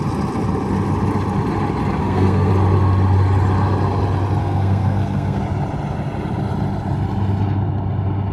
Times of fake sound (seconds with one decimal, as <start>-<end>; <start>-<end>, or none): 2.0-2.5; 4.4-5.4